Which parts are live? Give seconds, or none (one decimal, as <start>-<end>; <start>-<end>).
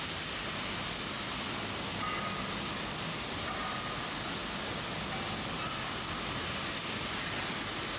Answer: 0.0-8.0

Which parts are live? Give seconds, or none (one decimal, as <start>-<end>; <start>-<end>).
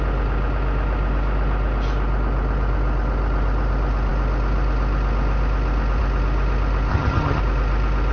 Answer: 0.0-6.9; 7.4-8.1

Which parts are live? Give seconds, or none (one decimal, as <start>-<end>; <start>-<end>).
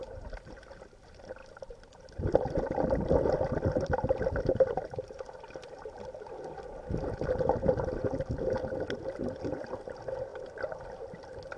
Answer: 0.0-1.4; 6.0-10.3; 11.0-11.6